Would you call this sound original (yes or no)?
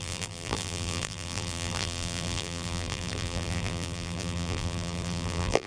no